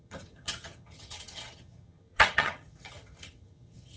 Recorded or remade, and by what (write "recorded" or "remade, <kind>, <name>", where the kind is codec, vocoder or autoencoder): remade, vocoder, HiFi-GAN